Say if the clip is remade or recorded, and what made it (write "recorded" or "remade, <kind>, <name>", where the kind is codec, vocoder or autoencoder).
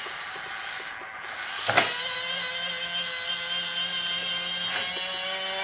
recorded